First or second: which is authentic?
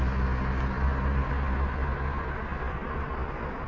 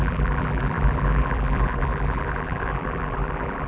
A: first